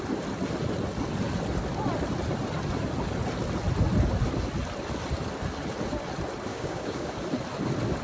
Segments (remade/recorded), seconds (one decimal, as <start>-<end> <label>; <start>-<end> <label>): 0.0-6.5 recorded; 6.5-7.1 remade; 7.1-8.0 recorded